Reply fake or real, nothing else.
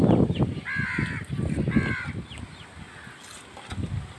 real